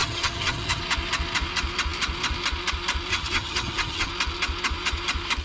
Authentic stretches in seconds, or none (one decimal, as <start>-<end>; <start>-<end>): 0.8-3.1; 4.1-5.4

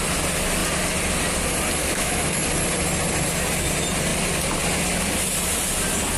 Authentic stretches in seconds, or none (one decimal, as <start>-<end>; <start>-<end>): 0.0-1.8; 2.4-6.2

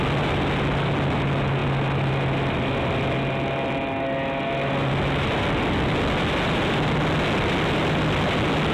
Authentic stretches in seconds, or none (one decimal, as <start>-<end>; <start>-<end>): 0.0-8.7

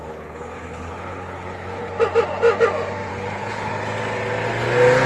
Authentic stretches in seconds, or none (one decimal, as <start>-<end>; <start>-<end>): 1.9-3.1; 3.7-5.1

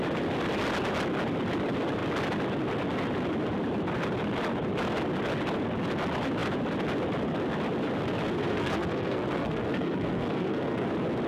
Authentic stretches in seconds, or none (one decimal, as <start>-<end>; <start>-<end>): 0.0-8.4; 10.9-11.3

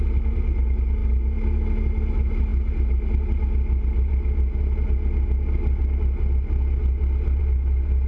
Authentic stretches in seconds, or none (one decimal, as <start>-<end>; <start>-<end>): 0.0-8.1

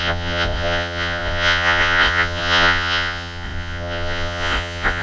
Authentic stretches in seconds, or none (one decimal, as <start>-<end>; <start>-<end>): none

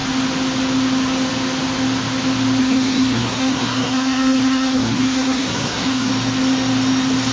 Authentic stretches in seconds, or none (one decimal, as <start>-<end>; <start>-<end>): 0.0-2.6; 6.1-7.3